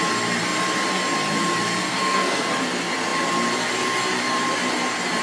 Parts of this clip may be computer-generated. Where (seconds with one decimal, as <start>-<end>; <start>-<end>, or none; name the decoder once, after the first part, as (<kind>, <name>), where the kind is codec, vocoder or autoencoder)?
1.8-2.5 (codec, SNAC)